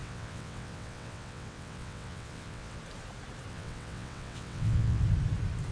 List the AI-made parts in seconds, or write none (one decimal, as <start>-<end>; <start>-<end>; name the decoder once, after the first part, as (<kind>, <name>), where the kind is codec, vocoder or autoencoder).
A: 0.0-2.8 (vocoder, WaveNeXt); 3.5-5.0